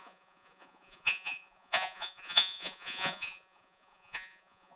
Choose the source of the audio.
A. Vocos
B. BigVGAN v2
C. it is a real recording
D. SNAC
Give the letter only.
A